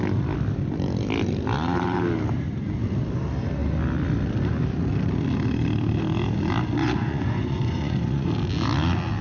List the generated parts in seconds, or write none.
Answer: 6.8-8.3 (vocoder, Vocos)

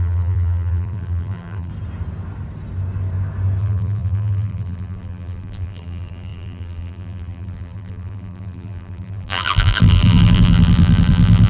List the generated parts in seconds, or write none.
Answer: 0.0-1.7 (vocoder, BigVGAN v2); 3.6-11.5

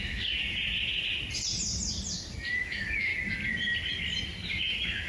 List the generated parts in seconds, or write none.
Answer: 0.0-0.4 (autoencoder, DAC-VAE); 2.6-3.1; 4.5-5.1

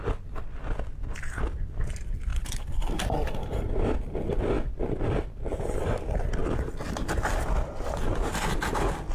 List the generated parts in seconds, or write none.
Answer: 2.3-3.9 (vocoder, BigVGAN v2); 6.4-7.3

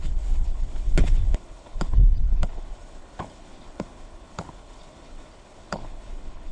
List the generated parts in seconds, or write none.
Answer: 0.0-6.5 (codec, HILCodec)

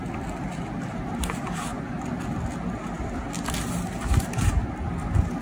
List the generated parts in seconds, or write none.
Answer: none